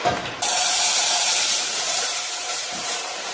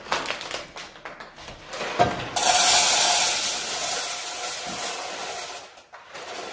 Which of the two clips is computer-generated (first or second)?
first